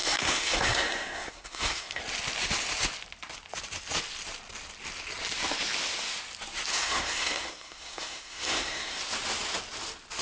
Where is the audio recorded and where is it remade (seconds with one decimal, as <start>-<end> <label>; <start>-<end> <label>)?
0.0-2.0 remade; 2.0-6.7 recorded; 6.7-9.0 remade; 9.0-10.2 recorded